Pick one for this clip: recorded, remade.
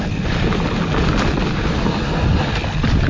recorded